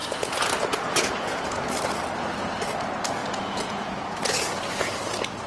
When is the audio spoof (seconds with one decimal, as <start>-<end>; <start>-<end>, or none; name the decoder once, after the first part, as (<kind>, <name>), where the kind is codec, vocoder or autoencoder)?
0.0-1.7 (vocoder, Vocos); 3.2-4.9